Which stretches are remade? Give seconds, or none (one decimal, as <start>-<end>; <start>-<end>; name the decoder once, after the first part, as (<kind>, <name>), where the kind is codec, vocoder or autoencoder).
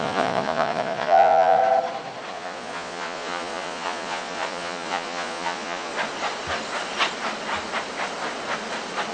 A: 0.0-1.6 (vocoder, Vocos); 2.3-5.9